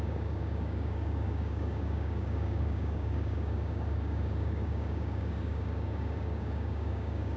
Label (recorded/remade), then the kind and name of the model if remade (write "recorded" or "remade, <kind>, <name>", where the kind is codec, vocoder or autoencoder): remade, codec, DAC